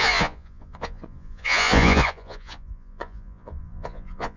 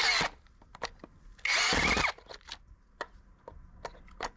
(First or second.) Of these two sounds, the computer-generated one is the first